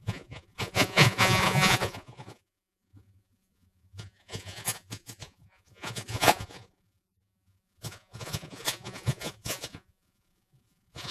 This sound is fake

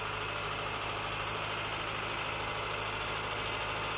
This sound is real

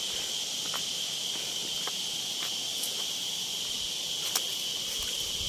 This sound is real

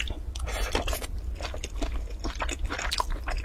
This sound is real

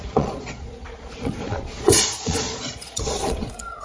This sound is fake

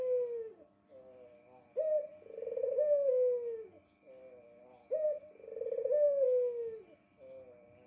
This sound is real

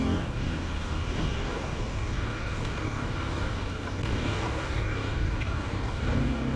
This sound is fake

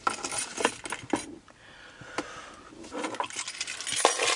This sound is real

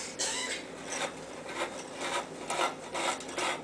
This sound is real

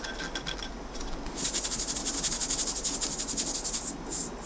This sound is real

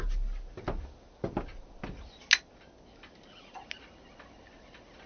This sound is real